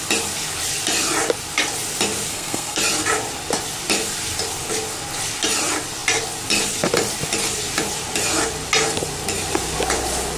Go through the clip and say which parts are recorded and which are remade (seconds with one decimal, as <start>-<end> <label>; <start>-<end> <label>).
0.0-2.3 recorded; 2.3-2.8 remade; 2.8-10.4 recorded